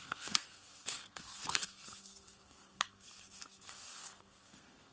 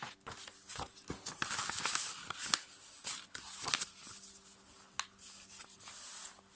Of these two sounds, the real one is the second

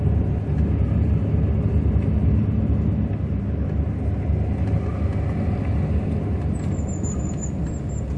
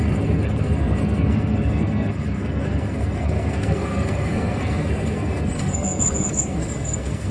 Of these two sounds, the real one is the first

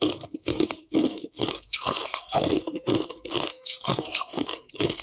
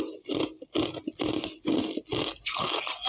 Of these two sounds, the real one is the second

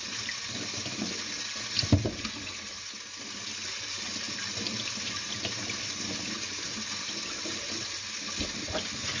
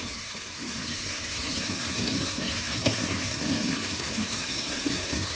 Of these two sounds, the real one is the first